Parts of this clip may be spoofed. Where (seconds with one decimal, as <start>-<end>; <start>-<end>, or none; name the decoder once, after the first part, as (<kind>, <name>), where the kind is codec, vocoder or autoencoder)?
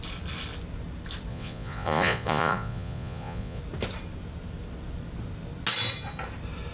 1.3-3.6 (vocoder, Vocos)